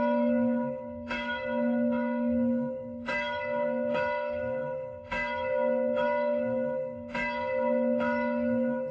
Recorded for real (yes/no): no